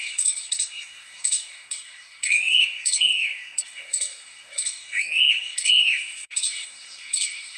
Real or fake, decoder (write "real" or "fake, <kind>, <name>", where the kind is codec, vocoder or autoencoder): fake, codec, SNAC